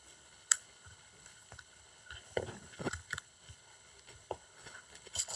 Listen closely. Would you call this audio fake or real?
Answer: fake